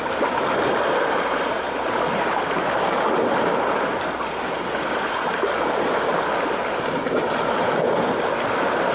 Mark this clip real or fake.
real